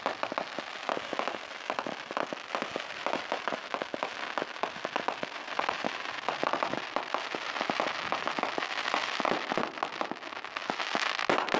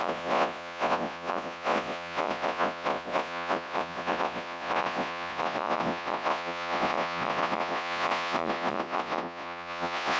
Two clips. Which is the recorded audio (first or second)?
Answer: first